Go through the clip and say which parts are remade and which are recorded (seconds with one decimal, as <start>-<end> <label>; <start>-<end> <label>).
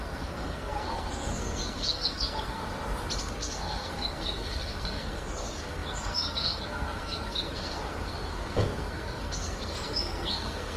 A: 0.0-2.6 remade; 2.6-3.2 recorded; 3.2-10.8 remade